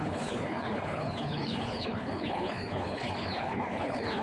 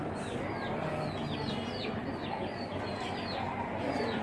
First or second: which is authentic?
second